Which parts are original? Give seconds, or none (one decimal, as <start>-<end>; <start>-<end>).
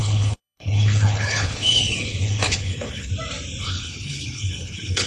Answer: 3.1-3.6